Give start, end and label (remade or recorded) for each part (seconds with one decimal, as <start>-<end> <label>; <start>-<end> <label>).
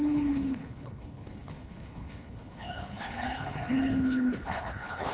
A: 0.0-5.1 remade